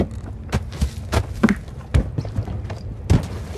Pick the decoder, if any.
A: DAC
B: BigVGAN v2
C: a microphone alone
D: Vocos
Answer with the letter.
C